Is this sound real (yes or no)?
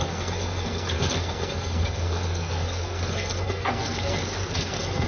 no